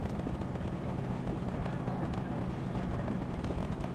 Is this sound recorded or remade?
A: recorded